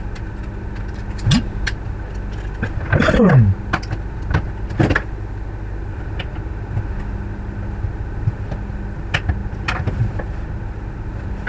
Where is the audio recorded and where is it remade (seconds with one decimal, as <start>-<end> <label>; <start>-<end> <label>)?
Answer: 0.0-11.5 recorded